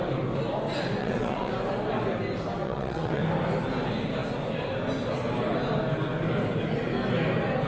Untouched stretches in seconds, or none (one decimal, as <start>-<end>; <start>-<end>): 0.0-1.0; 1.5-2.6; 3.2-7.7